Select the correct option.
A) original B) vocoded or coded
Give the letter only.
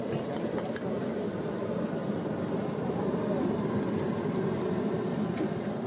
A